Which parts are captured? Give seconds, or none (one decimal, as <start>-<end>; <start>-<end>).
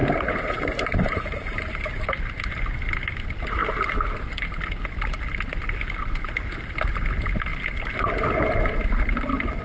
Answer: 2.2-9.6